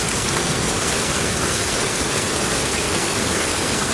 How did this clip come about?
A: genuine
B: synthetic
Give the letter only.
B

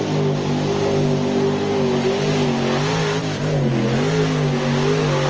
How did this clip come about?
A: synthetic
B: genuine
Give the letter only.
B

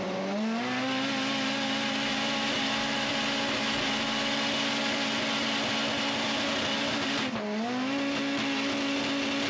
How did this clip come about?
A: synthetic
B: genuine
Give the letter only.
B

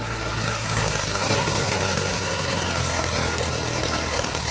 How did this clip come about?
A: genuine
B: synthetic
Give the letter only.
B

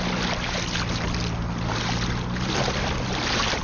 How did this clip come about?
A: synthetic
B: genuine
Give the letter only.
B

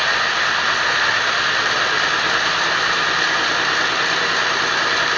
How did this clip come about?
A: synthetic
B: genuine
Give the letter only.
B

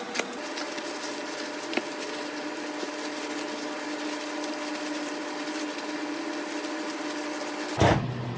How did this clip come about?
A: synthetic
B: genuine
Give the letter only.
B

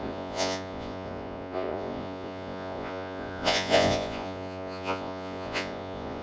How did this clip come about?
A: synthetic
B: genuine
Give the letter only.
A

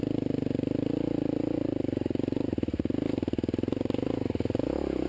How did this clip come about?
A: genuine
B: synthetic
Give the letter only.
A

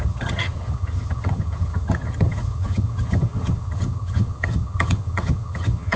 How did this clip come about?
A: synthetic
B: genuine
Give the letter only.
A